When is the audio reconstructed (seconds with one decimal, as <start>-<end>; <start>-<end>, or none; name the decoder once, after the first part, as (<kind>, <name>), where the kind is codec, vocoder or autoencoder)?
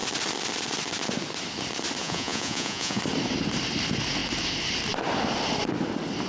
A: 2.0-3.0 (vocoder, Vocos)